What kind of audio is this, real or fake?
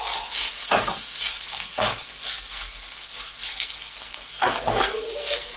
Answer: fake